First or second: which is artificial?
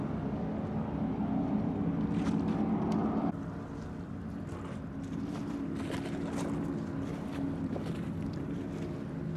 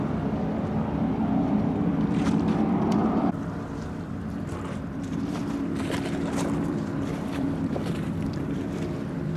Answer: second